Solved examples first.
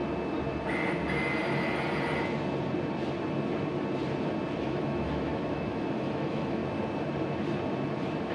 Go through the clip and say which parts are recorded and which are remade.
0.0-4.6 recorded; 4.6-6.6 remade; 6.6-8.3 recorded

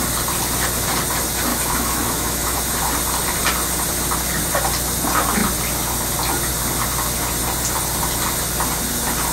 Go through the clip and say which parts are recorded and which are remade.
0.0-1.5 recorded; 1.5-2.6 remade; 2.6-9.3 recorded

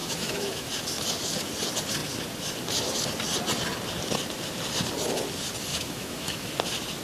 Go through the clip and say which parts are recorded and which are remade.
0.0-0.7 remade; 0.7-5.7 recorded; 5.7-6.5 remade; 6.5-7.0 recorded

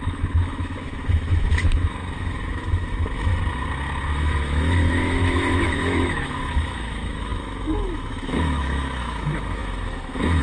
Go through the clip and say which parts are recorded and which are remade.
0.0-3.3 remade; 3.3-4.1 recorded; 4.1-10.4 remade

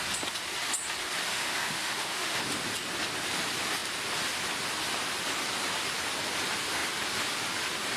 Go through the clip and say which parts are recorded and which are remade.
0.0-1.3 recorded; 1.3-2.4 remade; 2.4-8.0 recorded

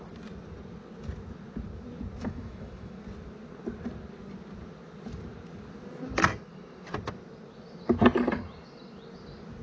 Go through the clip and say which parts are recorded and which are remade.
0.0-2.2 recorded; 2.2-3.0 remade; 3.0-9.6 recorded

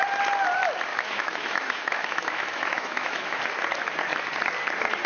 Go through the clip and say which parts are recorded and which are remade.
0.0-0.9 recorded; 0.9-3.4 remade; 3.4-5.1 recorded

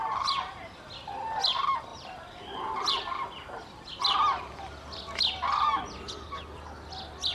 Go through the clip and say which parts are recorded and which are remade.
0.0-7.3 recorded